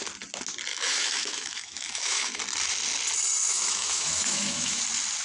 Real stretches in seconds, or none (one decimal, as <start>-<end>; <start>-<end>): 0.0-0.7; 2.4-3.5; 4.8-5.2

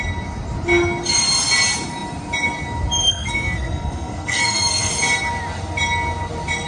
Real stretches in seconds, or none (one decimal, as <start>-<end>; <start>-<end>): 0.0-3.1; 4.9-6.7

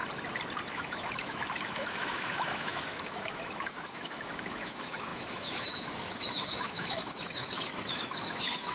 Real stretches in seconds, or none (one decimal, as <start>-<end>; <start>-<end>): 0.0-0.7

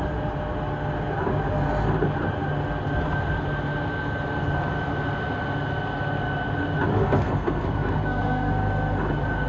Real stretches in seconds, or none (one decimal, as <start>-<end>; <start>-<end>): 0.0-6.9; 8.5-9.5